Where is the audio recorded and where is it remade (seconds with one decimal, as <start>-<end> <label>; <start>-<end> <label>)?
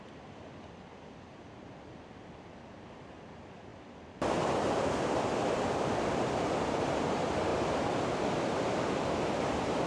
0.0-3.7 remade; 3.7-4.7 recorded; 4.7-7.5 remade; 7.5-8.9 recorded; 8.9-9.9 remade